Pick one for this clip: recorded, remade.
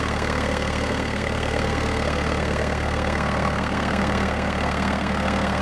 remade